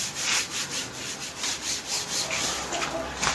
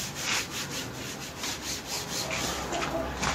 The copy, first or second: first